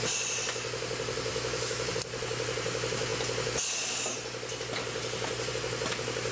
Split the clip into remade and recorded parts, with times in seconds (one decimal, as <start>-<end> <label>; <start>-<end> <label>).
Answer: 0.0-1.3 recorded; 1.3-1.9 remade; 1.9-6.3 recorded